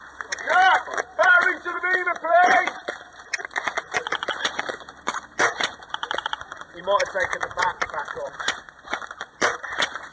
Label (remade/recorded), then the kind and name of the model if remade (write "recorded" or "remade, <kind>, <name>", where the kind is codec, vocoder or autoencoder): remade, vocoder, Vocos